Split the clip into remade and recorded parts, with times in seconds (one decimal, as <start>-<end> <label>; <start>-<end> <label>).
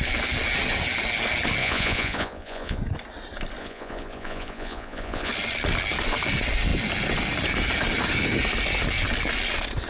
0.0-1.6 recorded; 1.6-2.8 remade; 2.8-3.6 recorded; 3.6-5.3 remade; 5.3-9.9 recorded